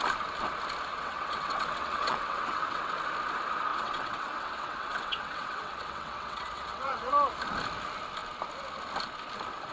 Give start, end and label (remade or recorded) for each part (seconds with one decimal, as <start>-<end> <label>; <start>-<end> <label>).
0.0-0.9 recorded; 0.9-2.9 remade; 2.9-3.7 recorded; 3.7-7.1 remade; 7.1-9.7 recorded